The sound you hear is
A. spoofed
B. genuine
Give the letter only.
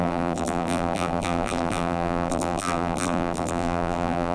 A